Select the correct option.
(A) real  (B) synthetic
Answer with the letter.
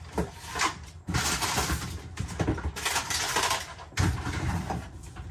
A